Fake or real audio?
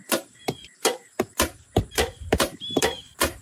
fake